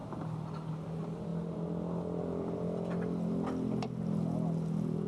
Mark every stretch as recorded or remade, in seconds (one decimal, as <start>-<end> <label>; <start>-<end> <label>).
0.0-5.1 recorded

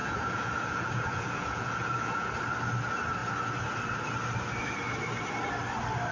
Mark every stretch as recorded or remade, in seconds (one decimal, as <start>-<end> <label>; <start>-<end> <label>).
0.0-2.3 remade; 2.3-6.1 recorded